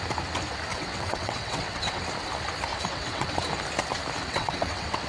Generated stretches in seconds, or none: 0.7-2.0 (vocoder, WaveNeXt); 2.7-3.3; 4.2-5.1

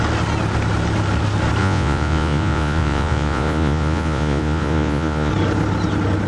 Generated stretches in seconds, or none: 1.6-5.3 (vocoder, Vocos)

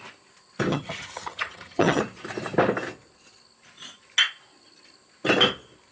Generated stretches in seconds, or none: 0.7-2.0 (vocoder, HiFi-GAN)

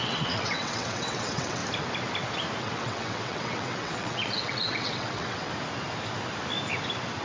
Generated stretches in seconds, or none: 0.0-1.6 (vocoder, WaveNeXt); 2.6-5.5

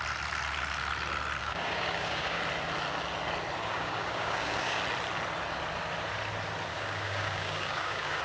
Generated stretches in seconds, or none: 1.4-2.4 (codec, DAC); 3.6-4.8; 6.7-8.2

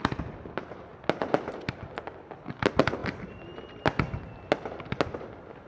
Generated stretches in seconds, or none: 3.0-3.8 (vocoder, BigVGAN v2)